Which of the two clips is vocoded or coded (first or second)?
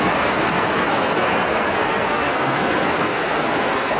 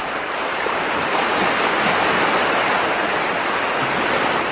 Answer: first